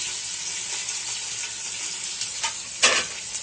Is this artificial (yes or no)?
no